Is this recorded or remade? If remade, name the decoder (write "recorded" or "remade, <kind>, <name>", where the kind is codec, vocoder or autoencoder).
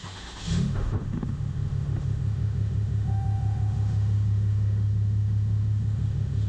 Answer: remade, autoencoder, DAC-VAE